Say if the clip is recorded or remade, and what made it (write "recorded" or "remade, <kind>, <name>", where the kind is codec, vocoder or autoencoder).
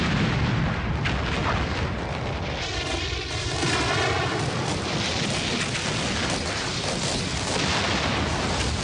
recorded